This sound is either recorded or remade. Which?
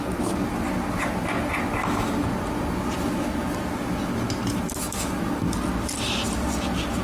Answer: recorded